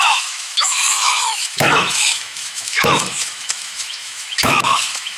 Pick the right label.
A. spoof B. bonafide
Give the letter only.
A